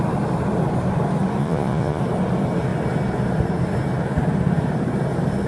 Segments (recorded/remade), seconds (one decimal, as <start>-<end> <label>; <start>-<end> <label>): 0.0-1.4 recorded; 1.4-2.0 remade; 2.0-5.5 recorded